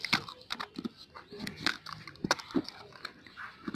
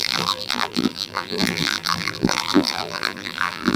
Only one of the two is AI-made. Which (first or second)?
second